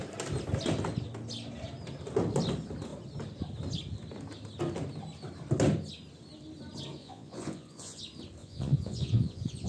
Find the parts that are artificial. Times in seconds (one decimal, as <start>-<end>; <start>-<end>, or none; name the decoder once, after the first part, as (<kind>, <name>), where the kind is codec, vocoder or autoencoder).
7.0-8.0 (vocoder, Vocos); 8.4-9.7